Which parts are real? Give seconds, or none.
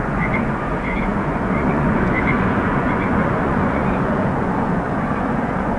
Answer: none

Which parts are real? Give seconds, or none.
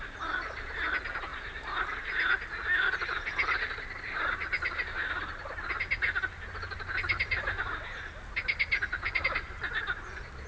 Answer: 0.0-10.5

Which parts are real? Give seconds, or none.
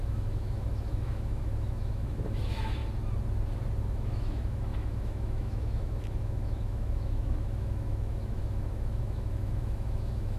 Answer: 2.8-3.9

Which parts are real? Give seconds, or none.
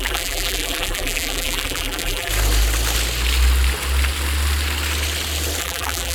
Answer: 2.3-5.6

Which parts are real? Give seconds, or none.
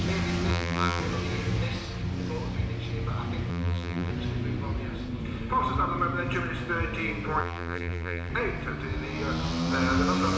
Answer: 0.0-0.5; 1.0-3.5; 4.1-7.4; 8.3-10.4